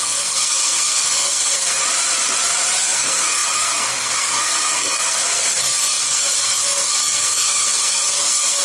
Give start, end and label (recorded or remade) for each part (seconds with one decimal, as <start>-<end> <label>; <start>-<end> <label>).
0.0-1.8 remade; 1.8-2.8 recorded; 2.8-8.6 remade